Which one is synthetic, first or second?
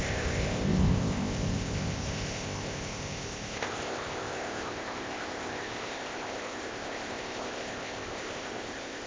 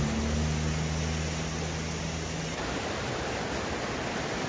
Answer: first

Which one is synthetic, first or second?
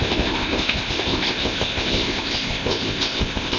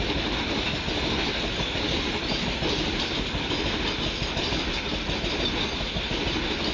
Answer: first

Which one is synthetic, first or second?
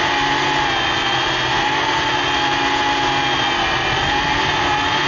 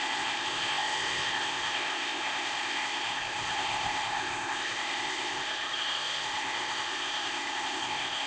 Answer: second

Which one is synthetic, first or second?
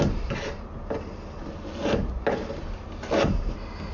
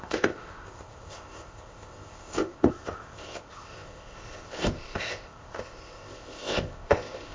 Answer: second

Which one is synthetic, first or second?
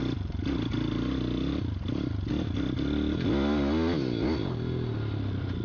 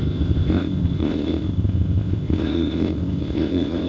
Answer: second